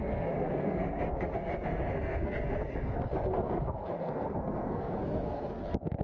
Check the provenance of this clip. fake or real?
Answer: fake